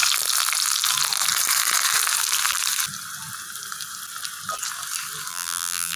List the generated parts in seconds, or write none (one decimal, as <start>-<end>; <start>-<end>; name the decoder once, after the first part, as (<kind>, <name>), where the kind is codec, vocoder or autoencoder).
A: 5.3-6.0 (vocoder, BigVGAN v2)